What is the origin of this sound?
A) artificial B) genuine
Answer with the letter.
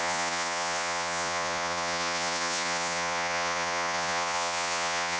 A